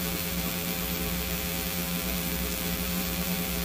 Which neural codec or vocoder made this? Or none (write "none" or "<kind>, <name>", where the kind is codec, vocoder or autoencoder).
vocoder, BigVGAN v2